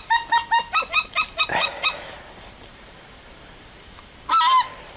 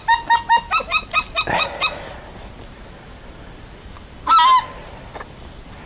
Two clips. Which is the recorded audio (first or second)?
second